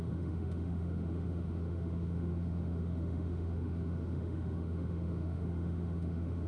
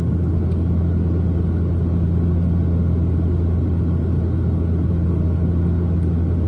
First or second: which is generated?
first